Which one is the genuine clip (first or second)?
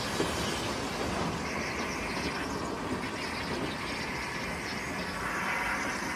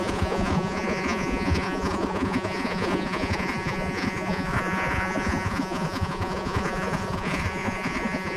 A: first